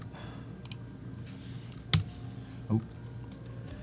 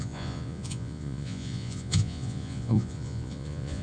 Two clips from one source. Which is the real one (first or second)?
first